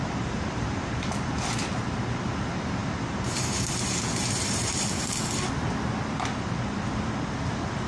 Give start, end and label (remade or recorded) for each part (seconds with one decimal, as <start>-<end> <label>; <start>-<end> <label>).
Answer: 0.0-1.3 remade; 1.3-2.8 recorded; 2.8-5.1 remade; 5.1-7.9 recorded